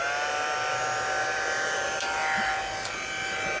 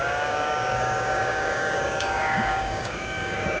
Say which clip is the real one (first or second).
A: first